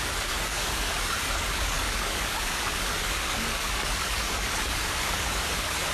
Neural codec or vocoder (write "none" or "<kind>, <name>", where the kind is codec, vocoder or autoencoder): codec, DAC